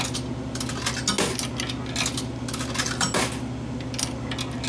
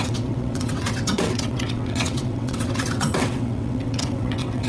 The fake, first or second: second